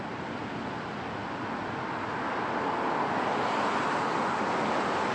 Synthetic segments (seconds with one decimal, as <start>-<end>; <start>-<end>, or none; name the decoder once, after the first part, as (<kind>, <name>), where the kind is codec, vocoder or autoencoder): none